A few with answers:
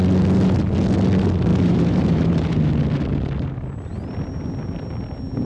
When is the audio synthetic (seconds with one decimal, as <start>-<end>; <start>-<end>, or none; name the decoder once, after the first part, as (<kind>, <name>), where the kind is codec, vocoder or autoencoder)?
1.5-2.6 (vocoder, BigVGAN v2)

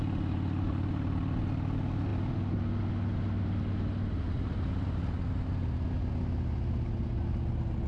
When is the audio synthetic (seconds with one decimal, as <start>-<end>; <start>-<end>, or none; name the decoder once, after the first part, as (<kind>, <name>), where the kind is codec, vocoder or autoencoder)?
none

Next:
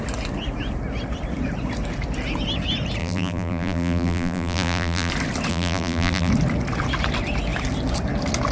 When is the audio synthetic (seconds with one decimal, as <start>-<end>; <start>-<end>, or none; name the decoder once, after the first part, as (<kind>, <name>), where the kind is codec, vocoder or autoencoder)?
3.0-5.1 (vocoder, BigVGAN v2); 5.5-6.3

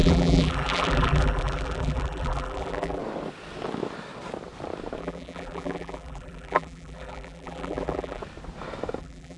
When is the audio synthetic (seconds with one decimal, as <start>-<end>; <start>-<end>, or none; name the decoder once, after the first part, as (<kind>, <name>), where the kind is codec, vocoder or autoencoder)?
0.0-3.0 (vocoder, BigVGAN v2); 5.0-8.2; 9.0-9.4

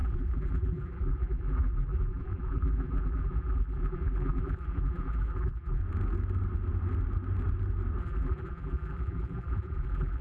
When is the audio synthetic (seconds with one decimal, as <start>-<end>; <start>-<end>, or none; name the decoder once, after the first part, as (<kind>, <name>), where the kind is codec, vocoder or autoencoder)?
0.0-5.8 (vocoder, BigVGAN v2); 8.0-10.2

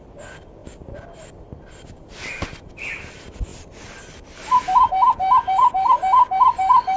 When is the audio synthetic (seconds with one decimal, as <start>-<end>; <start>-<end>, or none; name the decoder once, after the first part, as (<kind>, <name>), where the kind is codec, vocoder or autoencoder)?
none

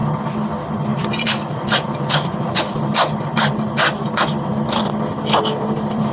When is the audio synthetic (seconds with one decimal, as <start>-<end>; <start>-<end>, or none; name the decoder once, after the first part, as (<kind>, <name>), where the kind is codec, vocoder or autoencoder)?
0.9-3.5 (vocoder, BigVGAN v2)

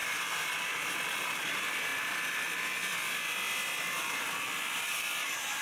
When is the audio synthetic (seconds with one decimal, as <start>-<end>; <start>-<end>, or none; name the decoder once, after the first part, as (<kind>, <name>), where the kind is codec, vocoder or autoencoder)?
0.0-5.6 (vocoder, BigVGAN v2)